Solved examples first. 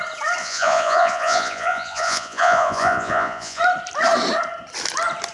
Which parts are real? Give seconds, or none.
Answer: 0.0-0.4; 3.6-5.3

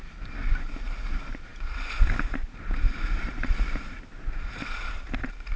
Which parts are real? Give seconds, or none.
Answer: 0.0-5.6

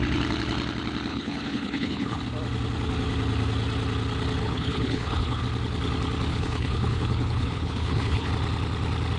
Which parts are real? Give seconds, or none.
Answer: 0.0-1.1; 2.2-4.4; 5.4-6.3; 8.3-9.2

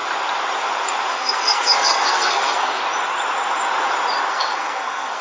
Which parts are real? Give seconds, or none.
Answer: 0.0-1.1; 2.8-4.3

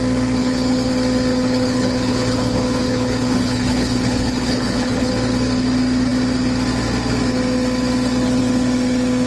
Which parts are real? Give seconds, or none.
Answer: 0.0-0.4; 0.9-1.3; 5.1-9.3

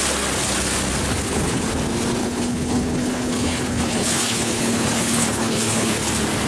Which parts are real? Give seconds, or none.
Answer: 0.0-1.1; 1.6-2.2; 6.1-6.5

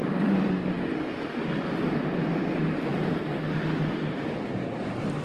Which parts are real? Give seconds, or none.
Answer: 0.0-1.4; 2.5-2.9; 4.1-5.2